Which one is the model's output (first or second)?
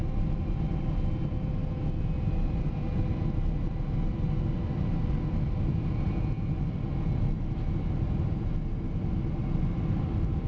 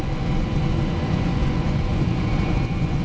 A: second